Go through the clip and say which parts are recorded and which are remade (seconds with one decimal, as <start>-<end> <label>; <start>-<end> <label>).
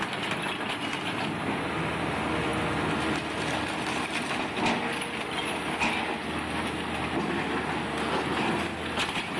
0.0-9.4 recorded